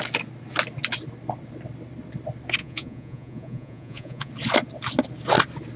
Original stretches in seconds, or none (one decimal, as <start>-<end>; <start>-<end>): 0.0-2.6; 4.3-5.8